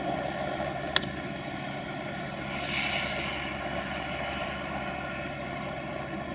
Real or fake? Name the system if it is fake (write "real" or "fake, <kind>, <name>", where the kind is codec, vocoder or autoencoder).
real